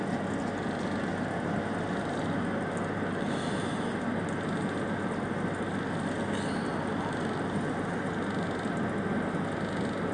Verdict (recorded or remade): recorded